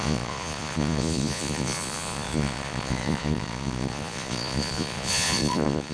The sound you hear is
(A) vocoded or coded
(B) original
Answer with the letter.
A